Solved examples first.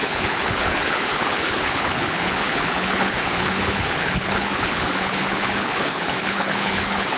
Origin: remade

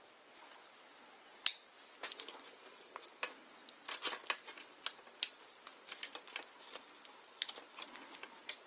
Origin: recorded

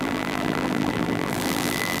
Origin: remade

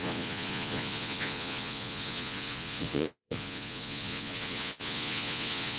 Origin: remade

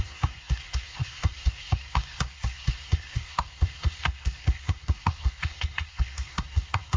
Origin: remade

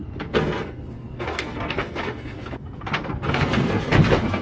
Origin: remade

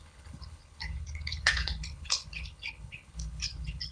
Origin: remade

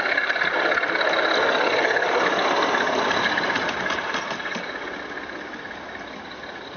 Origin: recorded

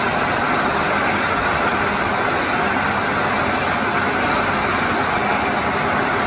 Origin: recorded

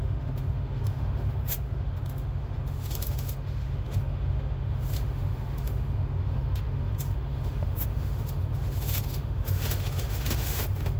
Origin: remade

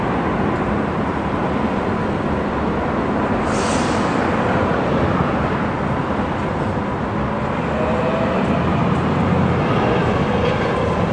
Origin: recorded